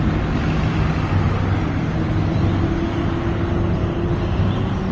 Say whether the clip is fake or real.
real